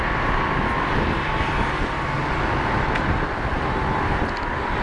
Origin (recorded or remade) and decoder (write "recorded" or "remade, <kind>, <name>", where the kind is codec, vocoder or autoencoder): recorded